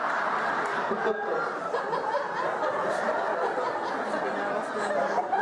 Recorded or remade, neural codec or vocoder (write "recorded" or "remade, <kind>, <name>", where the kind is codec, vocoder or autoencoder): recorded